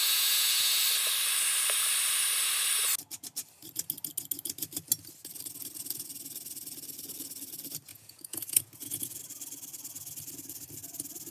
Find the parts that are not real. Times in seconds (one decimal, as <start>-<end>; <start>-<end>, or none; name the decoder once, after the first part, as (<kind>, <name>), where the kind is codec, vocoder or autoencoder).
0.0-0.8 (vocoder, Vocos); 7.9-9.2